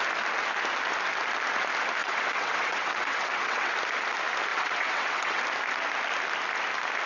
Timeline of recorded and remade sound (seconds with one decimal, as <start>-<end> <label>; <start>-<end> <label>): 0.0-2.0 recorded; 2.0-3.7 remade; 3.7-4.5 recorded; 4.5-5.4 remade; 5.4-7.1 recorded